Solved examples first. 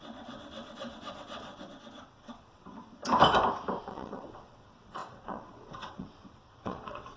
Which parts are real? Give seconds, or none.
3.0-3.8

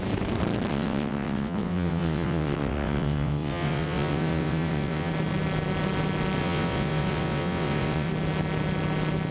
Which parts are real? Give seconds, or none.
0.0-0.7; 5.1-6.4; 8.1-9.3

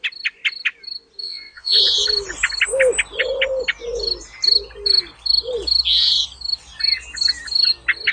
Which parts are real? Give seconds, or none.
0.0-1.2; 1.8-8.1

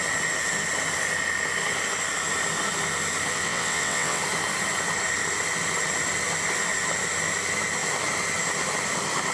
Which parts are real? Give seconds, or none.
0.0-3.3; 4.2-9.3

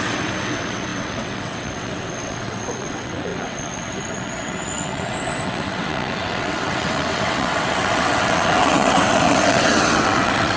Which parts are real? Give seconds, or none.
none

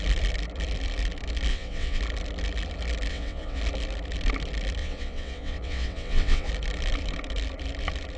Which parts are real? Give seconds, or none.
0.0-1.5; 2.0-3.1; 3.6-4.8; 6.5-8.2